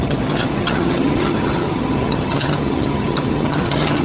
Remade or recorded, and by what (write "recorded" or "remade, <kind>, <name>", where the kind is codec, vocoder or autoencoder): remade, vocoder, HiFi-GAN